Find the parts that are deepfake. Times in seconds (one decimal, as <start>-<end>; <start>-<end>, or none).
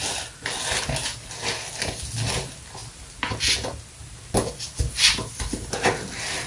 none